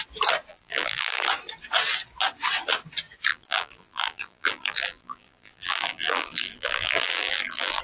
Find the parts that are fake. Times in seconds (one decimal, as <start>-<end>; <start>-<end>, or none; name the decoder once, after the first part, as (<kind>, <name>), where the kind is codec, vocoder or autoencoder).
0.5-1.3 (vocoder, BigVGAN v2); 3.3-7.8